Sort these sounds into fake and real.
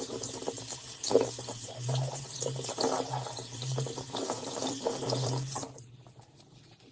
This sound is fake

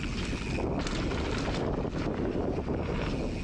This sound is real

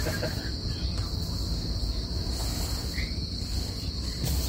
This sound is real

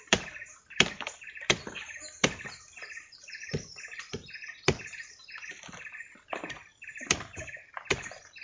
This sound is fake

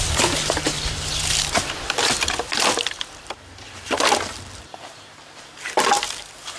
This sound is fake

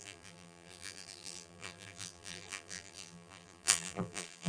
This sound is fake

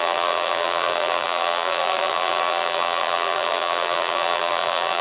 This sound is fake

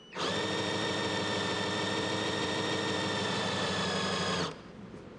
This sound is fake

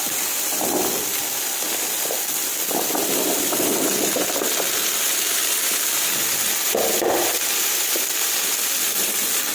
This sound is fake